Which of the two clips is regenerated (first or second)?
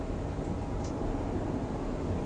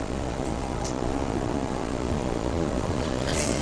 second